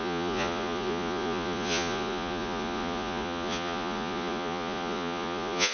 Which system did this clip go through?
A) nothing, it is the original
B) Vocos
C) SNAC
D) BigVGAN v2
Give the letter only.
B